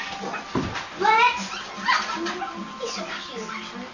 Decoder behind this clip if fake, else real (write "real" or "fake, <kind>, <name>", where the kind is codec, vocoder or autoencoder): real